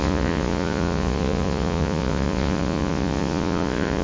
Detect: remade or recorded remade